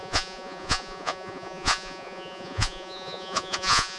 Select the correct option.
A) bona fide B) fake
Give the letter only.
B